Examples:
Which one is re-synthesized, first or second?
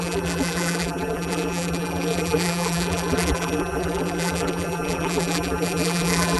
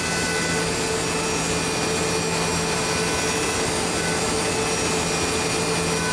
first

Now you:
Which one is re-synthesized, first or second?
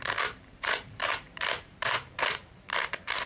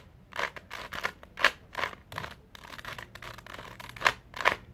first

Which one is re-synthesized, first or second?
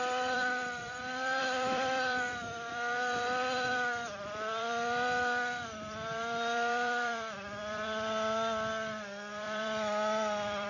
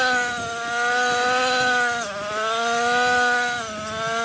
first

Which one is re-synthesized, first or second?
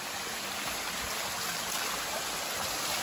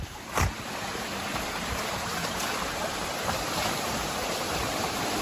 second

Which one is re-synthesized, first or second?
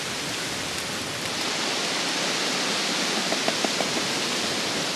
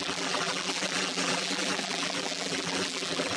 second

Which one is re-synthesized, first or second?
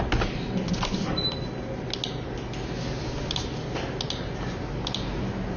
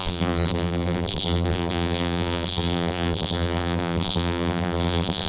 second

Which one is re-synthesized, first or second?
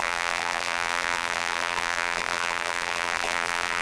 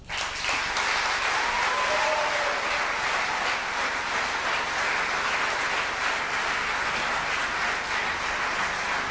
first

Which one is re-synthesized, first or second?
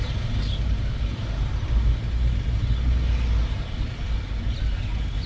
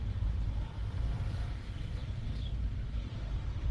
second